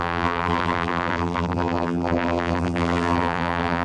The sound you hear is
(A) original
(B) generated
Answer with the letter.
B